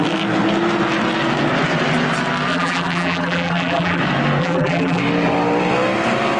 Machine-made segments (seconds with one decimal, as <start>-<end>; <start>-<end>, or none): 2.5-4.0; 4.4-5.0